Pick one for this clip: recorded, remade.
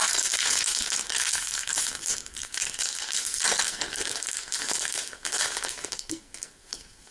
remade